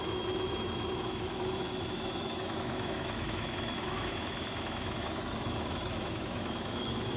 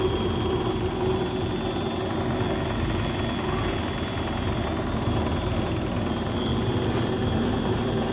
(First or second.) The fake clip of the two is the first